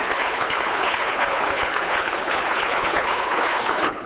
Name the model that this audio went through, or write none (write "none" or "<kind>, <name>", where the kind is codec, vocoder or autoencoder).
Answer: codec, HILCodec